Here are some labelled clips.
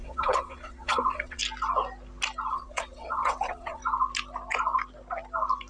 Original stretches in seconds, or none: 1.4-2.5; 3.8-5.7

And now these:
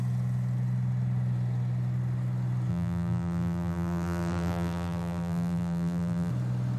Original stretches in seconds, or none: 0.0-2.7; 6.3-6.8

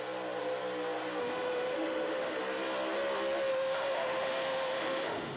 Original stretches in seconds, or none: 0.0-1.2; 2.4-3.5

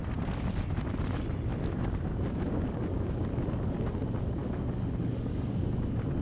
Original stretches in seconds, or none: 0.0-4.4; 5.5-6.2

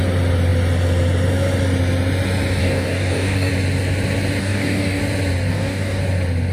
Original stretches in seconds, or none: 0.0-2.6; 3.5-4.4; 5.0-5.5; 6.0-6.5

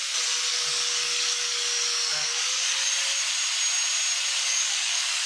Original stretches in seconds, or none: 0.0-0.5; 2.9-4.4

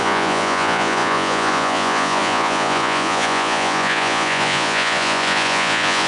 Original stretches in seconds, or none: none